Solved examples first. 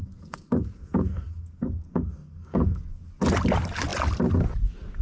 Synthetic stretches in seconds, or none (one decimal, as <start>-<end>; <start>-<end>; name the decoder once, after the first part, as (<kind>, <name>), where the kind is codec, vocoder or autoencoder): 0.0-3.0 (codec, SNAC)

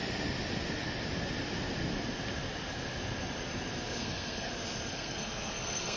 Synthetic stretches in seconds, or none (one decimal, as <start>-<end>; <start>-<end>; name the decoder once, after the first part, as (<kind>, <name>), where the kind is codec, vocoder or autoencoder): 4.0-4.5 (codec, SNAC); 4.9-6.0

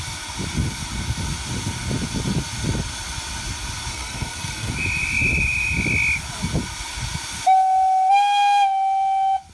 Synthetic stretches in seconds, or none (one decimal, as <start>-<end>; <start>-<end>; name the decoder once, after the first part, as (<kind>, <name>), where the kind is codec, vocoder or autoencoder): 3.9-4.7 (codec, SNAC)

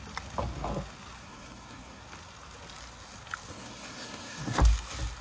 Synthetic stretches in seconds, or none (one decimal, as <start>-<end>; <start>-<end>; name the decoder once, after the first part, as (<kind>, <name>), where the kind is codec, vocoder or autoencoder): 1.2-2.0 (codec, SNAC); 3.5-4.6

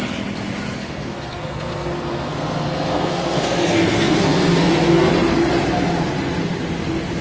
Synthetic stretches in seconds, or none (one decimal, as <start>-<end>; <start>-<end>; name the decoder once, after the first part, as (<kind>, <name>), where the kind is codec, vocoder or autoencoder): 0.8-5.1 (codec, SNAC)

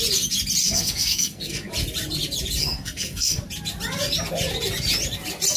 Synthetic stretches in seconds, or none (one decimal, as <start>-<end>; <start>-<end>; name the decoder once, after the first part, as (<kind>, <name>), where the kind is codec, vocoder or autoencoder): 0.6-1.7 (codec, SNAC); 2.6-3.4